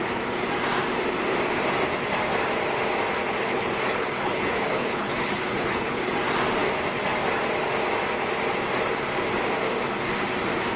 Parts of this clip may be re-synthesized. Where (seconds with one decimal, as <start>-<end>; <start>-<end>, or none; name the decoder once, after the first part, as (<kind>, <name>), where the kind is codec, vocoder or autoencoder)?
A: 3.4-6.1 (codec, HILCodec)